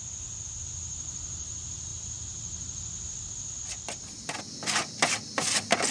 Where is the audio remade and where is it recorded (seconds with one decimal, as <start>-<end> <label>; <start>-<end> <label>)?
0.0-5.9 recorded

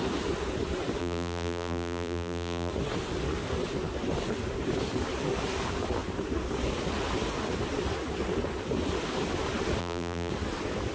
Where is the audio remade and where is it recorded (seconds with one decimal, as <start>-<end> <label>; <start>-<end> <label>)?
0.0-1.0 recorded; 1.0-2.7 remade; 2.7-9.8 recorded; 9.8-10.3 remade; 10.3-10.9 recorded